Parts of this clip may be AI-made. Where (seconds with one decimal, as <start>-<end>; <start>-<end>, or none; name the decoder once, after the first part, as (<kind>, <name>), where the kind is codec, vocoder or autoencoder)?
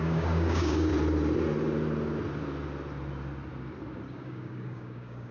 0.0-0.9 (codec, DAC); 4.1-5.3